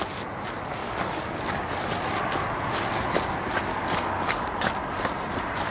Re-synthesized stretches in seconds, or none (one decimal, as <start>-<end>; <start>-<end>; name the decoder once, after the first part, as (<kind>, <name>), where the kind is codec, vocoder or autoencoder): 0.8-2.3 (codec, DAC); 3.7-4.7